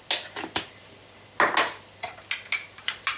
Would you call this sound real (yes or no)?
yes